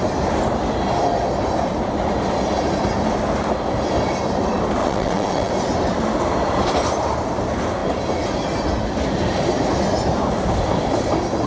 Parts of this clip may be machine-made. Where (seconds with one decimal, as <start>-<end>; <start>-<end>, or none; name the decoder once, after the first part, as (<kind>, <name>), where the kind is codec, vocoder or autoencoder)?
4.8-5.5 (vocoder, WaveNeXt)

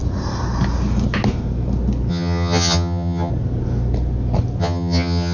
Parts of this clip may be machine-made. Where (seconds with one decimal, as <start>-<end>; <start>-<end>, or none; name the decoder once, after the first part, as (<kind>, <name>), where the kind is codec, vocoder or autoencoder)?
2.1-3.3 (vocoder, HiFi-GAN); 4.6-5.3